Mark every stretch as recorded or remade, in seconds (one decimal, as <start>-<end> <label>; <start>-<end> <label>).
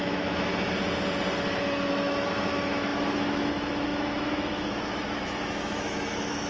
0.0-0.5 remade; 0.5-1.9 recorded; 1.9-6.5 remade